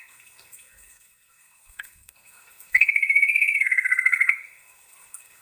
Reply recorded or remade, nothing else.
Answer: remade